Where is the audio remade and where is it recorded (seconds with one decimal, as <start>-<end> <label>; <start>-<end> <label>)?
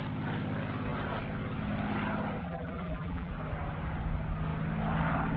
0.0-2.4 recorded; 2.4-3.3 remade; 3.3-5.4 recorded